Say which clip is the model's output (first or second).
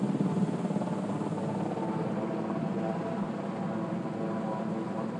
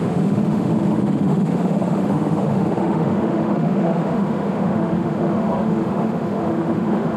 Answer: second